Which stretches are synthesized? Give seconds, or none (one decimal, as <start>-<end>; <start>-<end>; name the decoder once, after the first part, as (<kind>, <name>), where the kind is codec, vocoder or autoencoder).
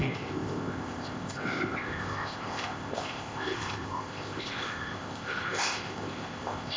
0.0-6.8 (codec, ZipCodec)